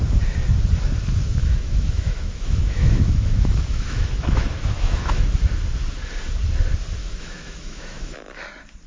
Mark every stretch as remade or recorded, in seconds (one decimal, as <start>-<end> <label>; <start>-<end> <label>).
0.0-1.4 recorded; 1.4-5.4 remade; 5.4-7.0 recorded; 7.0-8.4 remade; 8.4-8.9 recorded